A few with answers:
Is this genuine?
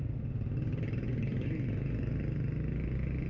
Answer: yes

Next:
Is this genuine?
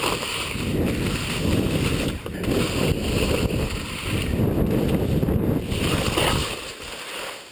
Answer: yes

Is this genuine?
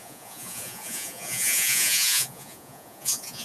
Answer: no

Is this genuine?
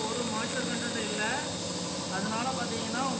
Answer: yes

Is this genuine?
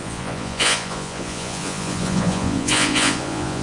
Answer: no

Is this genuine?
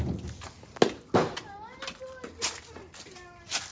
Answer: yes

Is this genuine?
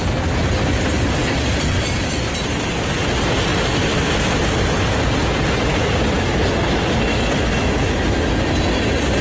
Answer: yes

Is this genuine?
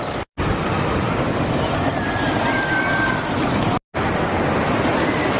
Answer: yes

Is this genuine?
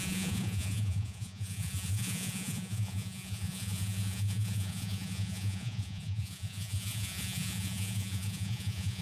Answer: no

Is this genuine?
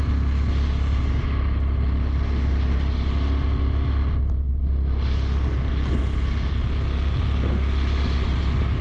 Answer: yes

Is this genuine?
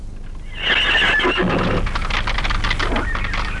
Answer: yes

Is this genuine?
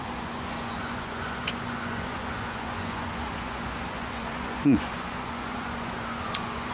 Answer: no